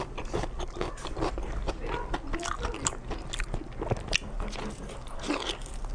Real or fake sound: real